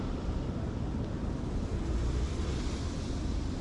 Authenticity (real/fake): fake